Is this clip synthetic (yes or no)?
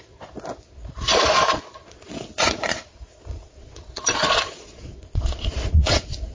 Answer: yes